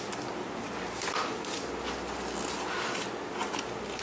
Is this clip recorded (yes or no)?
yes